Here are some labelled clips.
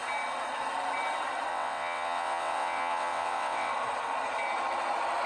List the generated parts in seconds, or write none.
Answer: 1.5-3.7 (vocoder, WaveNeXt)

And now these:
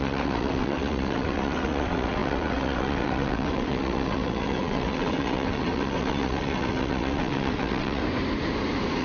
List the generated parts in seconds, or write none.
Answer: 0.0-8.0 (vocoder, WaveNeXt)

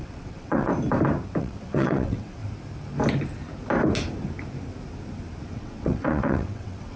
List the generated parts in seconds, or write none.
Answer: 0.0-0.7 (vocoder, WaveNeXt); 1.4-2.4; 5.5-7.0

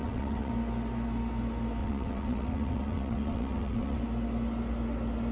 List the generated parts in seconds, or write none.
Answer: 0.0-0.5 (vocoder, WaveNeXt); 1.8-4.0

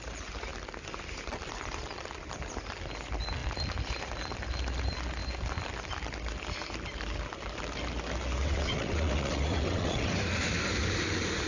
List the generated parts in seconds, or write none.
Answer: 8.4-10.1 (vocoder, WaveNeXt)